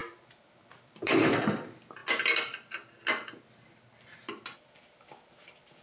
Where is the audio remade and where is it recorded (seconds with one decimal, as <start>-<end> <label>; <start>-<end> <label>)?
0.0-2.0 remade; 2.0-3.7 recorded; 3.7-5.8 remade